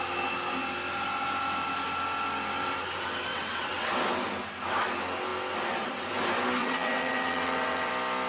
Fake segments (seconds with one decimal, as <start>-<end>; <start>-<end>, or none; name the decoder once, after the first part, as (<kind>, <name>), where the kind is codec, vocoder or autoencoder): 3.3-3.9 (vocoder, WaveNeXt); 6.6-7.9